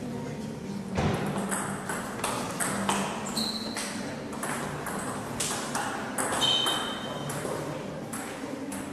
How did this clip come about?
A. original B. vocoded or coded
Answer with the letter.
A